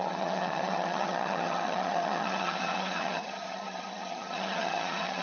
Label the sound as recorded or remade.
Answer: remade